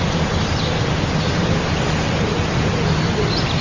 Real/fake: real